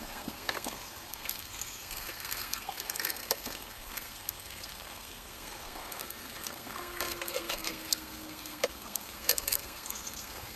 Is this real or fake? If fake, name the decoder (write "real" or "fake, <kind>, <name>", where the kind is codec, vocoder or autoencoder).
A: fake, codec, SNAC